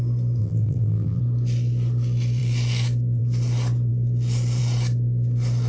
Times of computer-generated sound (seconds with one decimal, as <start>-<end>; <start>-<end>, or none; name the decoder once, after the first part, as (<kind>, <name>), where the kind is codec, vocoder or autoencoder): 0.4-1.2 (vocoder, BigVGAN v2)